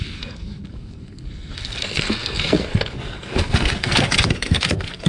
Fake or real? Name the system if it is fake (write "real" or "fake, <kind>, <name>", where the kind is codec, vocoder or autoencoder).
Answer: fake, codec, SNAC